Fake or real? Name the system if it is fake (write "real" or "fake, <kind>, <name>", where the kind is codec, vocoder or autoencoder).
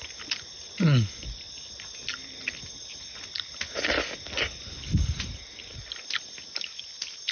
real